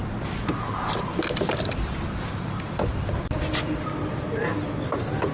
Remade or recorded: recorded